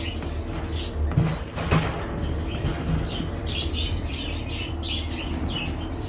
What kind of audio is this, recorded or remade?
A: recorded